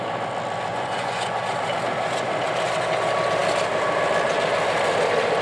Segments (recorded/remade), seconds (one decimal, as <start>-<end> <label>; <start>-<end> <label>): 0.0-0.7 recorded; 0.7-1.4 remade; 1.4-5.4 recorded